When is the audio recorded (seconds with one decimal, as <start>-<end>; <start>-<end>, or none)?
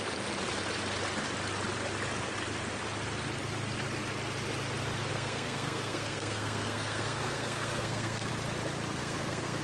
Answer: 0.0-5.1; 8.3-9.0